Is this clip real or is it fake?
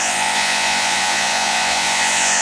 fake